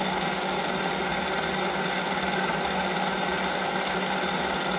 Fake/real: real